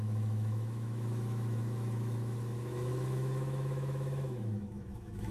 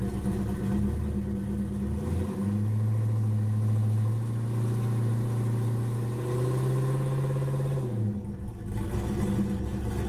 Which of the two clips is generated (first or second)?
first